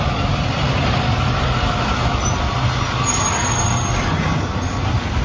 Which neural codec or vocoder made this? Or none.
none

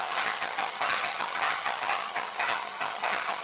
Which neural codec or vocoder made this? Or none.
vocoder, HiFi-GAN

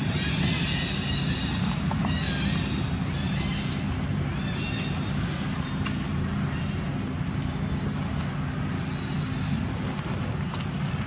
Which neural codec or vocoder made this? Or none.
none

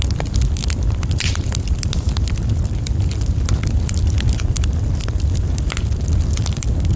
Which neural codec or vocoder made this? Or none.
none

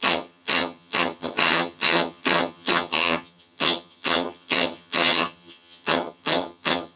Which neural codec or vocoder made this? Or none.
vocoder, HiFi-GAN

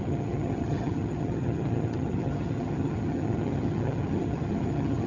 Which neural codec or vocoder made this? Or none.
vocoder, HiFi-GAN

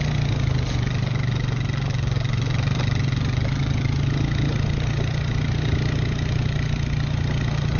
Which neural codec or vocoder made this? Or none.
none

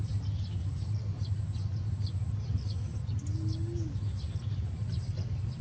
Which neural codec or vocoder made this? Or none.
none